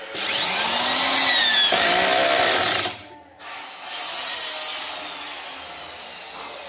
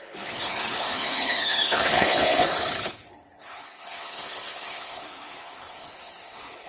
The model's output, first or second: second